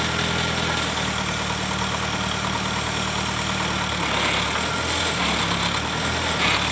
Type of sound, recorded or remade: recorded